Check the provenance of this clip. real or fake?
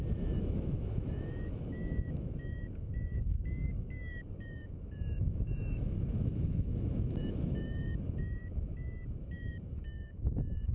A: fake